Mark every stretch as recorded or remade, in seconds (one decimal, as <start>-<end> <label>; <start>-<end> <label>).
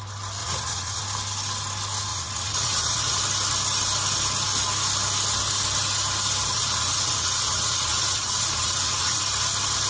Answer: 0.0-0.4 recorded; 0.4-1.0 remade; 1.0-2.1 recorded; 2.1-3.2 remade; 3.2-6.5 recorded; 6.5-9.2 remade; 9.2-9.9 recorded